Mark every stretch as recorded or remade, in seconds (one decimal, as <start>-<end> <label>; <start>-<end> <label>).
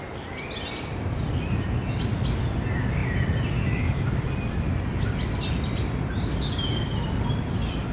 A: 0.0-7.9 recorded